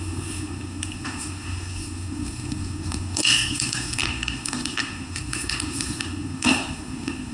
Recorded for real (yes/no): no